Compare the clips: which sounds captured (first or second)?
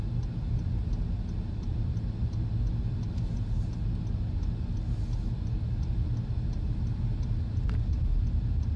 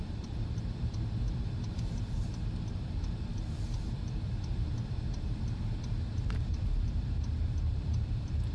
first